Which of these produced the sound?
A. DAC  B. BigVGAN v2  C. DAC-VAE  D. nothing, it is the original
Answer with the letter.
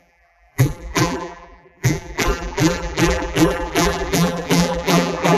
B